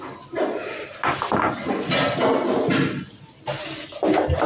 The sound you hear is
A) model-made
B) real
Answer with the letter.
B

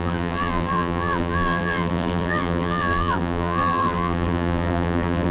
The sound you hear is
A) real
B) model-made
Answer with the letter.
B